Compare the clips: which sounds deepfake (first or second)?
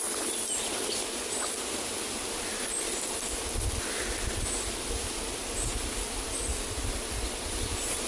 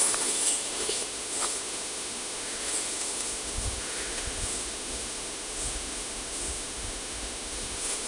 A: second